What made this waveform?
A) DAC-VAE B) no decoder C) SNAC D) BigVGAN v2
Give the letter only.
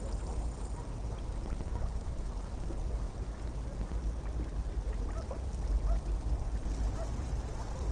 B